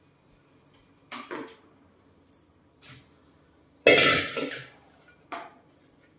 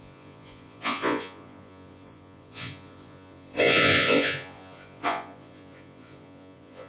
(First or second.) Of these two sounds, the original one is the first